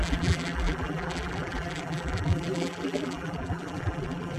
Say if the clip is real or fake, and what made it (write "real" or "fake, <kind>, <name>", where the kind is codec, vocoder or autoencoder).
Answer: fake, vocoder, BigVGAN v2